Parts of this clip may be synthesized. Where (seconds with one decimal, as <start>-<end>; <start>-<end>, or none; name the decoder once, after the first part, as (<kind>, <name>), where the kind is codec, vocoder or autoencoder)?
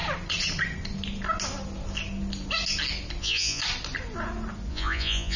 3.2-3.6 (vocoder, Vocos); 4.7-5.4